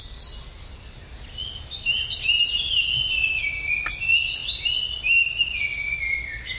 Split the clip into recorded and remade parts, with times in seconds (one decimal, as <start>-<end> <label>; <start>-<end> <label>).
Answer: 0.0-6.6 recorded